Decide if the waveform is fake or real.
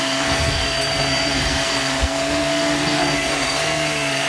fake